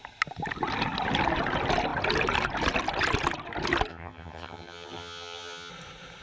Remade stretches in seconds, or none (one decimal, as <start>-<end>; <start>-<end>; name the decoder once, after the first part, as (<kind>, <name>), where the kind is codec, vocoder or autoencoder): 3.9-5.7 (vocoder, HiFi-GAN)